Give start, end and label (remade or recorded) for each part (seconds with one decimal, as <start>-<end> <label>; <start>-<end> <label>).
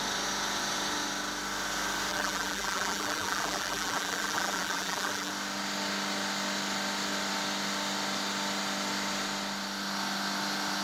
0.0-2.1 recorded; 2.1-5.3 remade; 5.3-10.8 recorded